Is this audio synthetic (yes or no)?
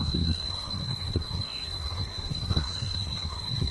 yes